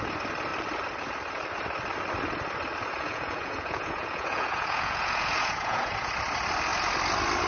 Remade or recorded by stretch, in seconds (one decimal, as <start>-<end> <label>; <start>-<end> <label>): 0.0-2.9 recorded; 2.9-6.1 remade; 6.1-7.5 recorded